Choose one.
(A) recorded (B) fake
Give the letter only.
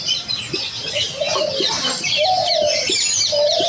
A